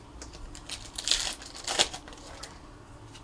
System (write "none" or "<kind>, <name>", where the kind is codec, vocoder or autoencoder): none